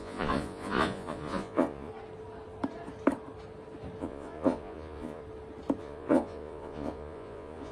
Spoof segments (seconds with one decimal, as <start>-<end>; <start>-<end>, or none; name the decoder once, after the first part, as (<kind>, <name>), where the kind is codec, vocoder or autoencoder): 0.0-1.9 (vocoder, Vocos); 4.0-5.2; 5.8-7.7